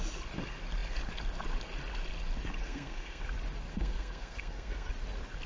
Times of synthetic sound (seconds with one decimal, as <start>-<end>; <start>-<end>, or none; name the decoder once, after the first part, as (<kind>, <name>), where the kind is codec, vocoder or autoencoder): 2.6-3.2 (codec, SNAC); 3.7-4.9